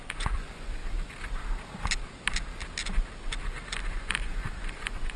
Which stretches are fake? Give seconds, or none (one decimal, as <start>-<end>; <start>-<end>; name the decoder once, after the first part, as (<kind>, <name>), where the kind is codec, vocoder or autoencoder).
0.0-0.8 (vocoder, Vocos); 3.9-5.2